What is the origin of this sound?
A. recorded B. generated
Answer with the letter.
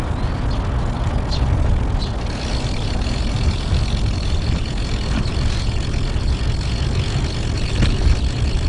A